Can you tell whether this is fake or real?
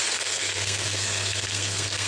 fake